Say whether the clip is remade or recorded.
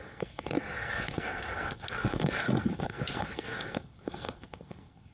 remade